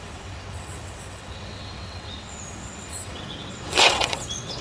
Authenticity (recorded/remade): remade